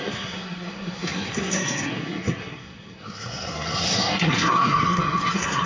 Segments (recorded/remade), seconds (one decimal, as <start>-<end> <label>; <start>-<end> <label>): 0.0-5.7 remade